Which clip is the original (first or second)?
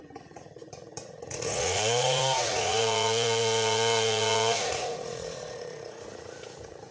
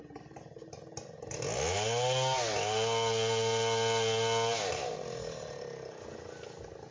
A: second